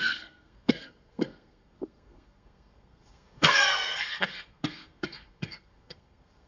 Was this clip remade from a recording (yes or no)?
yes